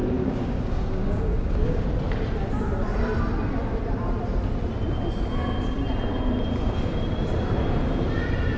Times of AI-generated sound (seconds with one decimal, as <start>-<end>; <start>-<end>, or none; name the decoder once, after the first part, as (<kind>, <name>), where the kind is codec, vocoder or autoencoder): 0.0-1.8 (codec, DAC)